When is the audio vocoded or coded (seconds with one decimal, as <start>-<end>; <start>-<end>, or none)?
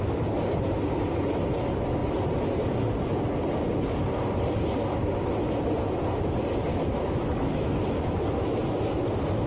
6.7-8.6